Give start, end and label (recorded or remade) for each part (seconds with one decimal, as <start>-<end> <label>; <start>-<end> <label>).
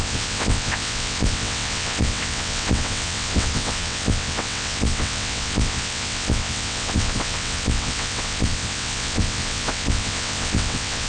0.0-11.1 remade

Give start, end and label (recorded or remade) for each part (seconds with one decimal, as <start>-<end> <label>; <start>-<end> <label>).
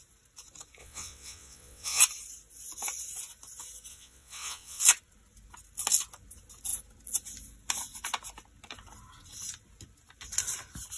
0.0-0.8 recorded; 0.8-2.0 remade; 2.0-3.9 recorded; 3.9-4.8 remade; 4.8-11.0 recorded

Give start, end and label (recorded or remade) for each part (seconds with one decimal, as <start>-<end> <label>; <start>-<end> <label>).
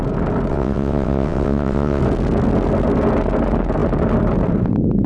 0.0-0.5 recorded; 0.5-2.0 remade; 2.0-5.1 recorded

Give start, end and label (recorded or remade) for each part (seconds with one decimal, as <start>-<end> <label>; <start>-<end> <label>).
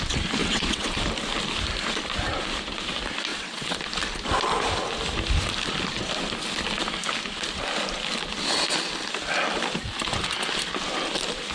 0.0-0.4 recorded; 0.4-1.0 remade; 1.0-3.3 recorded; 3.3-3.8 remade; 3.8-11.5 recorded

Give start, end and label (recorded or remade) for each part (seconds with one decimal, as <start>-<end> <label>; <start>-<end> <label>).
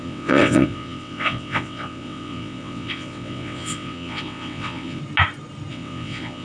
0.0-5.0 remade; 5.0-5.7 recorded; 5.7-6.4 remade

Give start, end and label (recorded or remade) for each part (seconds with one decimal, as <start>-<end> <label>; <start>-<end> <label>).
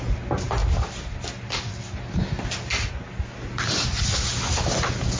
0.0-5.2 recorded